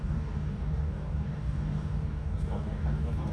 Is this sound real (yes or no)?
no